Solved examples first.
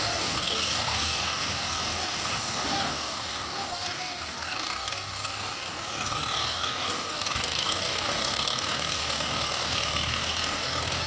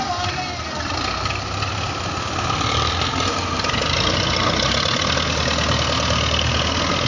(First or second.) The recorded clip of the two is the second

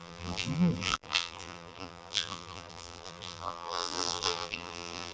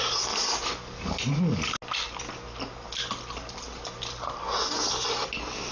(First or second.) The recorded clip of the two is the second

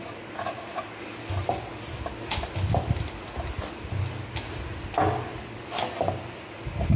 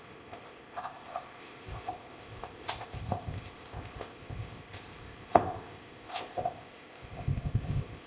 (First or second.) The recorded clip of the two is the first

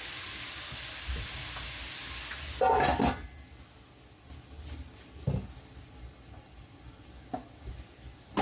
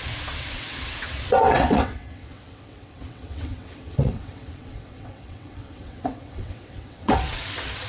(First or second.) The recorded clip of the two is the first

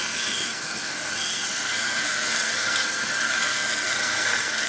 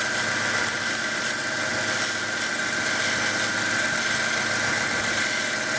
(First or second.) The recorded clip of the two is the second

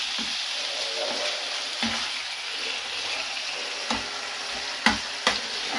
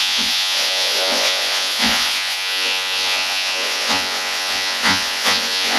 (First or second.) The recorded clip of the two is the first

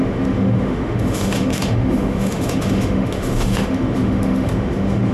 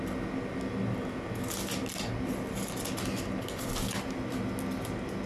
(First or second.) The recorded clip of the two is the second